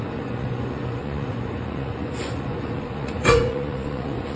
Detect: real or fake fake